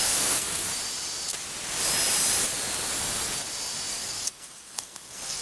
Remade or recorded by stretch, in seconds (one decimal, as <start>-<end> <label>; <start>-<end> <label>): 0.0-0.7 remade; 0.7-3.9 recorded; 3.9-5.4 remade